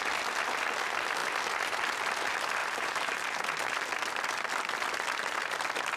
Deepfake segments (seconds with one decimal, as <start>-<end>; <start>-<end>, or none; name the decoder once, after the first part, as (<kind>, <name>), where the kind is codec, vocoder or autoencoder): 2.6-3.4 (vocoder, BigVGAN v2)